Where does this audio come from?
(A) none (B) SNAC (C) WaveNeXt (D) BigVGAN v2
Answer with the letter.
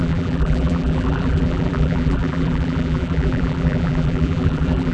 D